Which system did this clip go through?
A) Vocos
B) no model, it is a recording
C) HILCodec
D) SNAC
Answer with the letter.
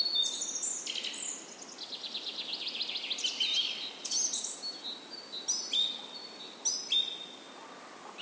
B